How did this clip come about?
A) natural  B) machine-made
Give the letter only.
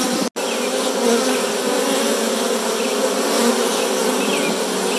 A